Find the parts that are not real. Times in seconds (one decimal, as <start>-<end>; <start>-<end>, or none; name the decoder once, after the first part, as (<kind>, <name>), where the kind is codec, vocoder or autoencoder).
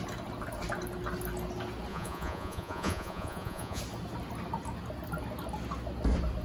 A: 1.9-3.8 (vocoder, Vocos)